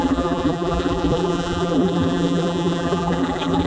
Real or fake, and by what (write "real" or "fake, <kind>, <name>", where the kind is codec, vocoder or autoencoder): fake, vocoder, BigVGAN v2